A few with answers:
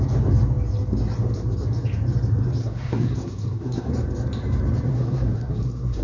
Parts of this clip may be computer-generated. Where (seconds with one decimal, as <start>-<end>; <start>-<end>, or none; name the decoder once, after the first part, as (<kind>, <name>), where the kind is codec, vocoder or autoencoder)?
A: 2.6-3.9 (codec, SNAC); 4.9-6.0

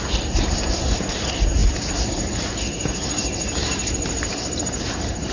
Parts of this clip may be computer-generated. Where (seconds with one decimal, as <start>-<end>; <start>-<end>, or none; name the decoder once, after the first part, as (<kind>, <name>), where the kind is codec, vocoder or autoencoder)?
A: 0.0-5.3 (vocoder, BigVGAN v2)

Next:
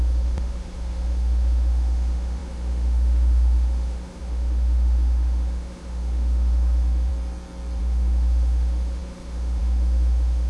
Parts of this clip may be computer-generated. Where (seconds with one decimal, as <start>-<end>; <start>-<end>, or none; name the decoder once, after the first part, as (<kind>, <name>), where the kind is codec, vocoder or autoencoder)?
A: 0.0-7.1 (autoencoder, DAC-VAE); 7.8-10.5